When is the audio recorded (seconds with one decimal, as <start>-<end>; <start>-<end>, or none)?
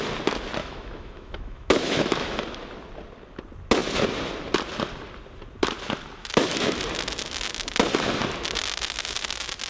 0.0-0.6; 2.4-6.2; 6.8-9.7